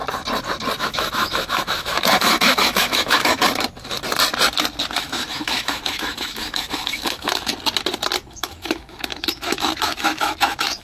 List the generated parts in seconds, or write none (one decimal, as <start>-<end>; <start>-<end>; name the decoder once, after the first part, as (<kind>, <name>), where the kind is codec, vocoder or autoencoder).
0.8-3.4 (autoencoder, DAC-VAE); 5.0-7.5; 8.3-10.8